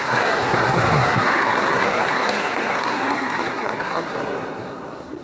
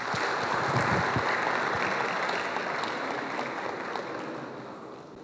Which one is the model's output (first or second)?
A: first